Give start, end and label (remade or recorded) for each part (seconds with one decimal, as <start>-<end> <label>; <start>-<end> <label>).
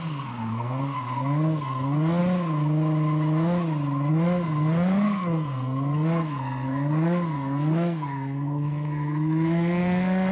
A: 0.0-2.2 remade; 2.2-4.1 recorded; 4.1-10.3 remade